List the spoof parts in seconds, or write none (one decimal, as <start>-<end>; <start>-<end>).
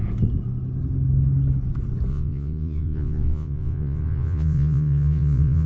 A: 2.1-5.7